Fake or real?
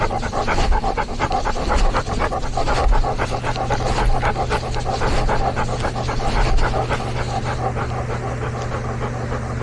real